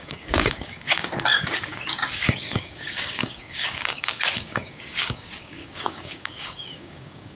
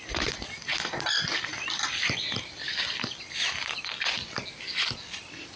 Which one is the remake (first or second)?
first